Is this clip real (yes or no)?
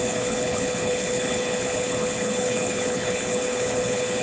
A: no